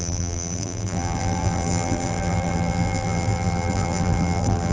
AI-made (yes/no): yes